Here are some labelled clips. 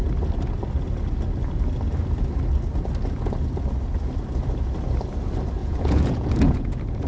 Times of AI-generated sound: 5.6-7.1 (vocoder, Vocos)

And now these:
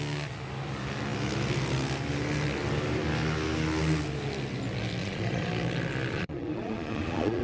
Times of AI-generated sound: 5.0-5.5 (vocoder, Vocos); 6.1-7.4